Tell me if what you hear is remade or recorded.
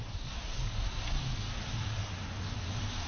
recorded